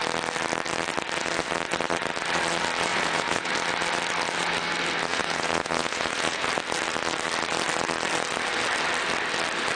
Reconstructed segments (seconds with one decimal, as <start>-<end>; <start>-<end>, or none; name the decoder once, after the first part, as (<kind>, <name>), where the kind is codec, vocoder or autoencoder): 2.9-3.5 (vocoder, Vocos); 5.1-6.5